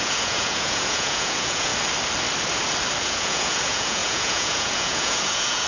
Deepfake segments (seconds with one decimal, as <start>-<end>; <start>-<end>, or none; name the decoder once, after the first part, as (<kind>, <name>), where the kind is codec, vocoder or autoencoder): 0.0-1.7 (vocoder, Vocos); 3.0-5.7